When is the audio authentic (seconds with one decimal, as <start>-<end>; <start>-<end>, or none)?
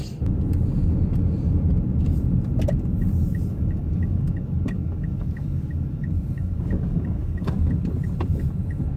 0.0-3.5; 7.5-9.0